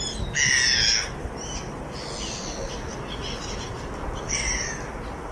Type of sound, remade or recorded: recorded